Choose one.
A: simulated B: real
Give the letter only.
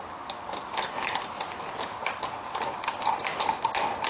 B